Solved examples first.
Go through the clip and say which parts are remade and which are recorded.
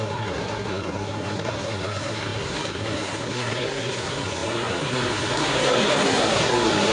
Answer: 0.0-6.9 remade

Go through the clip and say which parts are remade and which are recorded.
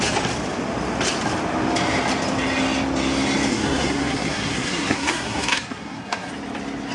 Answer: 0.0-3.5 recorded; 3.5-6.3 remade; 6.3-6.9 recorded